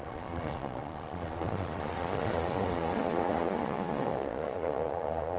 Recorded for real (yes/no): no